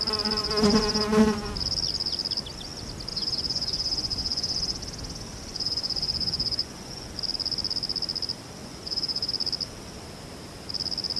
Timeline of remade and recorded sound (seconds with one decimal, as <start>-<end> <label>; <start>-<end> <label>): 0.0-0.4 recorded; 0.4-1.5 remade; 1.5-3.1 recorded; 3.1-4.8 remade; 4.8-5.5 recorded; 5.5-7.1 remade; 7.1-8.6 recorded; 8.6-9.3 remade; 9.3-11.2 recorded